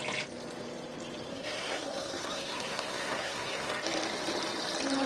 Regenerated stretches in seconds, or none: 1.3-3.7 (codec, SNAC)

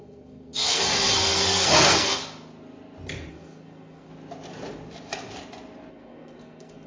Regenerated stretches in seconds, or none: 0.0-2.2 (codec, SNAC); 3.3-4.1; 5.9-6.9

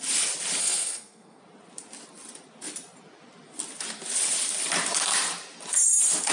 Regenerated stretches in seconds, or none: 0.6-1.4 (codec, SNAC)

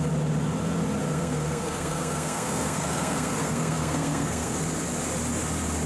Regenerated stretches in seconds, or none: 1.0-4.5 (codec, SNAC)